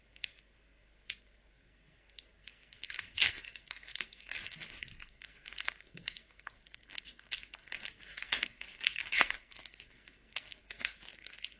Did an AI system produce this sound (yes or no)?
yes